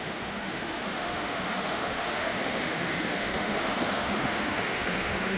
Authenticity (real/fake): fake